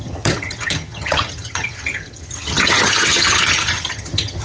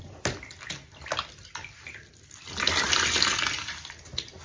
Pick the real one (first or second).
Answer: second